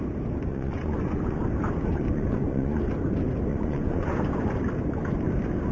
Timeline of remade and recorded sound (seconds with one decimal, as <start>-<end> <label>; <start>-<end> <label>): 0.0-0.5 recorded; 0.5-1.4 remade; 1.4-1.9 recorded; 1.9-2.8 remade; 2.8-3.5 recorded; 3.5-4.2 remade; 4.2-5.7 recorded